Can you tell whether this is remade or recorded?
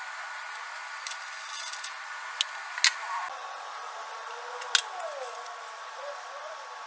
recorded